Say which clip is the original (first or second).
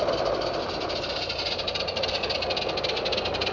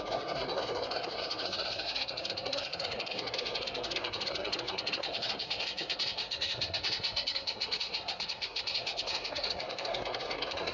first